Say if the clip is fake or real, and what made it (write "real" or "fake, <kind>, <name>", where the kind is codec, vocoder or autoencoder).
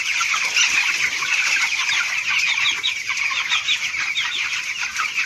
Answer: real